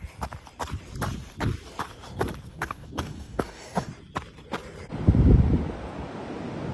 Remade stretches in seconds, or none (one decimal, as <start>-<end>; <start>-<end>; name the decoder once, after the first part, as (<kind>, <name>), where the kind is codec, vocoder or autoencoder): 2.5-3.9 (codec, DAC)